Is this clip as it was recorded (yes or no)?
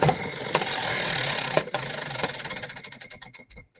no